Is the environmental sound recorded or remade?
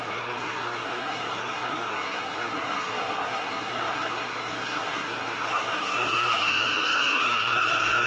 remade